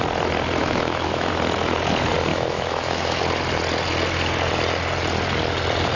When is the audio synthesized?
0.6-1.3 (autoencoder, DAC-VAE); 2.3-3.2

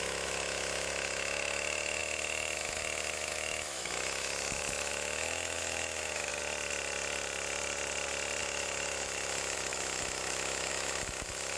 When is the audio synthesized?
0.0-6.3 (autoencoder, DAC-VAE); 8.4-11.6

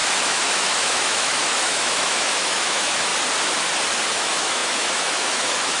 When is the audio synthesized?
0.0-3.1 (autoencoder, DAC-VAE); 4.1-5.8

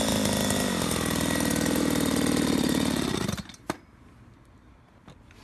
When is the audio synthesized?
none